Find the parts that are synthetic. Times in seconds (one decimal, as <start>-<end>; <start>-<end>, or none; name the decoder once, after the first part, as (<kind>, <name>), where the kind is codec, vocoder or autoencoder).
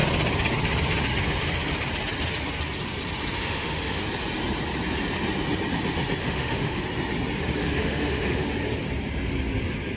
3.4-4.0 (autoencoder, DAC-VAE); 6.2-6.8; 7.6-8.5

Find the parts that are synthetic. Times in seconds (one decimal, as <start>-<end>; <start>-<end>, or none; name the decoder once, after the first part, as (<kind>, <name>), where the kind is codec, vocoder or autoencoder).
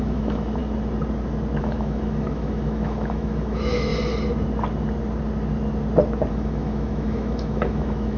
0.0-0.6 (autoencoder, DAC-VAE); 1.6-3.9; 6.3-8.2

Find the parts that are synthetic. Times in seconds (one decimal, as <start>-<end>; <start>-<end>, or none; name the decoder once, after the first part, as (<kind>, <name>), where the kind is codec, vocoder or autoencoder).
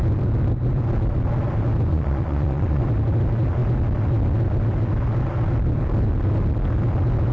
1.9-2.8 (vocoder, Vocos)